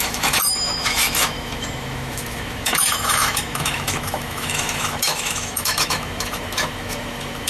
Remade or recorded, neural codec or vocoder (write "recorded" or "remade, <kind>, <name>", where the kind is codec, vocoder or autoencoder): remade, autoencoder, DAC-VAE